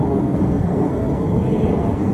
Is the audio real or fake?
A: fake